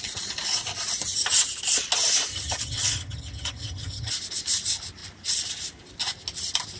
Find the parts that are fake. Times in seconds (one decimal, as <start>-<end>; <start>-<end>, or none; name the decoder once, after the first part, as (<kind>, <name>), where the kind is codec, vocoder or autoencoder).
2.3-4.1 (vocoder, HiFi-GAN)